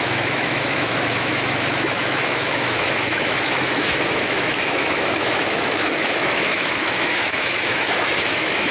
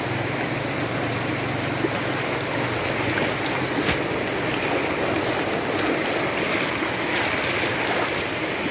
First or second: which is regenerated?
first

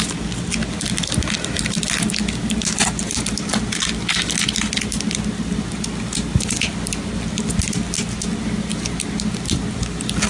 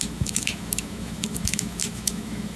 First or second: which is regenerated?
second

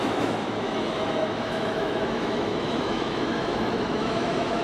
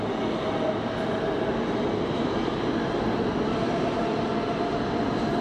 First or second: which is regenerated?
first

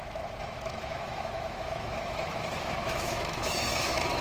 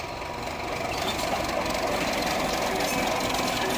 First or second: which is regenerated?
first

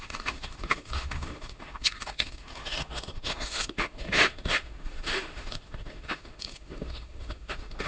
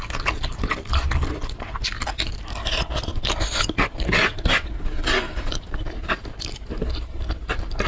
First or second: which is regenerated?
first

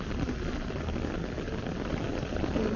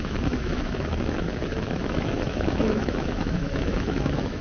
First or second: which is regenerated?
second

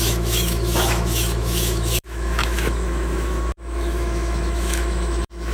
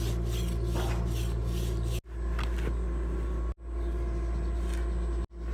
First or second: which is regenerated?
first